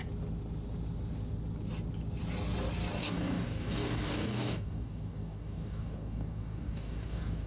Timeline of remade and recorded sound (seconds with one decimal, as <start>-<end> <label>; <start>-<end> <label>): 0.0-3.0 recorded; 3.0-7.5 remade